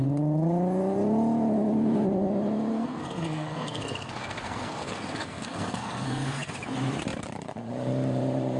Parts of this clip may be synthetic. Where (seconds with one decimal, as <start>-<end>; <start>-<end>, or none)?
2.7-6.5